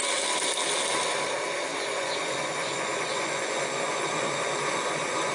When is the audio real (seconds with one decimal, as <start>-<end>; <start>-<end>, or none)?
0.0-1.7